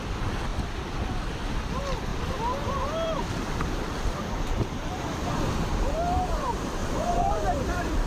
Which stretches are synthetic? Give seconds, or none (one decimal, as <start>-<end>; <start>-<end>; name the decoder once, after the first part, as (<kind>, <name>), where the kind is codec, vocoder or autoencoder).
2.1-5.0 (vocoder, BigVGAN v2); 6.8-8.1

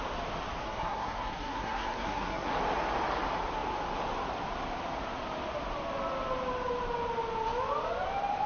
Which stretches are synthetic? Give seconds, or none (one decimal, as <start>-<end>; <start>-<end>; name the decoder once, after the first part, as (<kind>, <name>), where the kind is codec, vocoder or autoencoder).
0.6-2.5 (codec, SNAC)

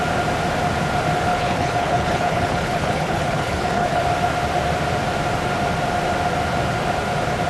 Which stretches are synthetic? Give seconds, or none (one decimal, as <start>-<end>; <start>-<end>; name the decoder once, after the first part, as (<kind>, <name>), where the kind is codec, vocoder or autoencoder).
1.3-4.0 (codec, HILCodec)

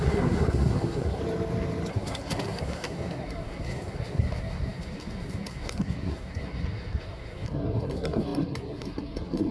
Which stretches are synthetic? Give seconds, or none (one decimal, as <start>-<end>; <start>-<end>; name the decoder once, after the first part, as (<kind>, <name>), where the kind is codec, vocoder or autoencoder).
0.0-1.2 (codec, SNAC); 1.9-9.5